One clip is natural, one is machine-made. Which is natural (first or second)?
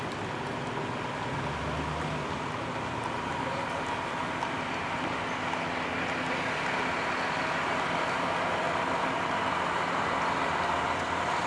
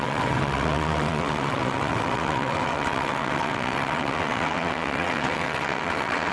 first